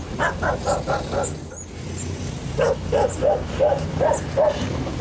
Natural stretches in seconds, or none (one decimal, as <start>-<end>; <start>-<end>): 0.0-5.0